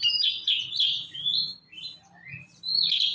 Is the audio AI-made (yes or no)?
yes